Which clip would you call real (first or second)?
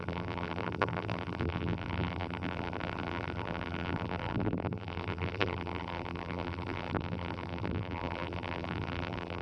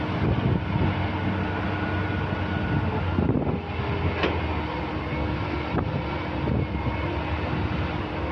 second